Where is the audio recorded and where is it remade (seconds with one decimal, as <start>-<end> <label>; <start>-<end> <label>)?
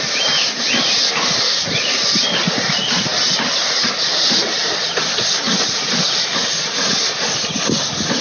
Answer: 0.0-8.2 recorded